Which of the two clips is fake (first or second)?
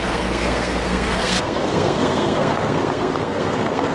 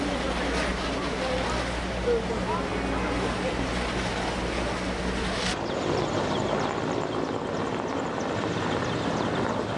first